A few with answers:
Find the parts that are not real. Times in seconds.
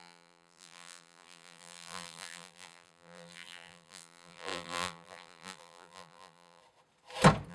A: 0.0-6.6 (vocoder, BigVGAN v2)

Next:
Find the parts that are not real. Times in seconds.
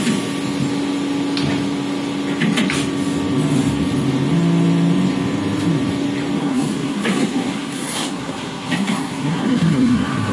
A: 6.4-10.3 (codec, SNAC)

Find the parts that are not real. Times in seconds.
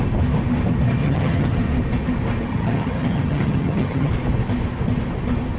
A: 1.0-1.6 (vocoder, HiFi-GAN); 2.5-4.1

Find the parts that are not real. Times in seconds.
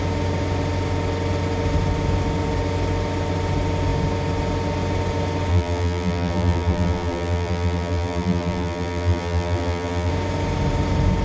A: 5.5-10.1 (vocoder, BigVGAN v2)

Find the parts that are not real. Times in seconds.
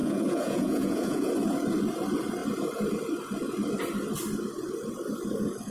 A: 0.0-1.3 (vocoder, Vocos)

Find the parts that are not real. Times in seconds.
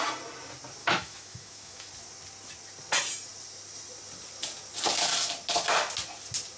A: 0.8-1.9 (autoencoder, DAC-VAE)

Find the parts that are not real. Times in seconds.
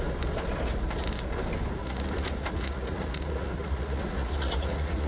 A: 1.8-5.1 (vocoder, Vocos)